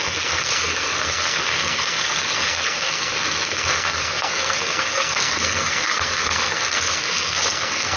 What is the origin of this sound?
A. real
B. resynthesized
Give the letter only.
B